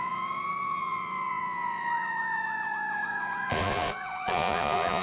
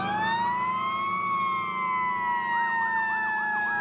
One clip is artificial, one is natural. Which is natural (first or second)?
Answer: second